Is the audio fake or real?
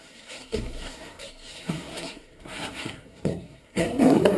fake